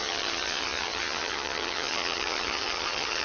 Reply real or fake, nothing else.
fake